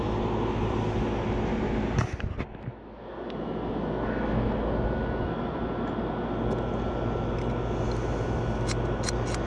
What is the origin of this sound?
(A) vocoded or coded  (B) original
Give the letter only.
B